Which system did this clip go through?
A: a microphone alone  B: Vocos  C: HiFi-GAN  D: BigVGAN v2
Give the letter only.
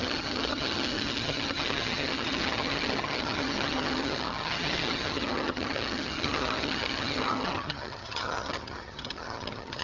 C